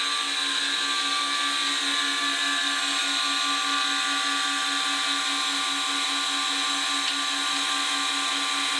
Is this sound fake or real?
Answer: real